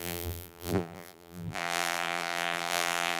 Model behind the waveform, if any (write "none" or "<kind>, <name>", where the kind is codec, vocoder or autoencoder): vocoder, BigVGAN v2